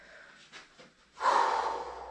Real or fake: real